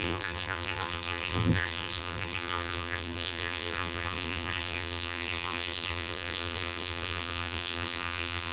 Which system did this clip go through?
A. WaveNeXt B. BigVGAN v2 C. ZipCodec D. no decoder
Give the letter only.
B